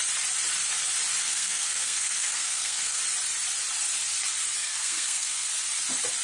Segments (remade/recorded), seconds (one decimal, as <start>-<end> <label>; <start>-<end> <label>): 0.0-1.2 recorded; 1.2-3.0 remade; 3.0-4.6 recorded; 4.6-5.5 remade; 5.5-6.2 recorded